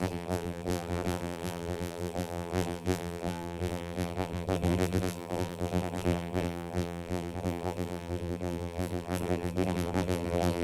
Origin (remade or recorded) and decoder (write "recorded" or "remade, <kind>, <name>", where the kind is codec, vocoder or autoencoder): remade, vocoder, BigVGAN v2